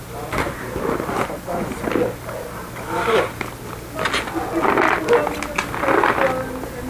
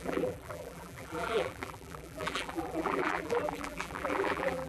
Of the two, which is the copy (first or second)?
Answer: second